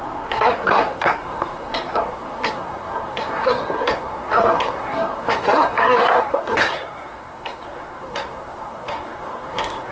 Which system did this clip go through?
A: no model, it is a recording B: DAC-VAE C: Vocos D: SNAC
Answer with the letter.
D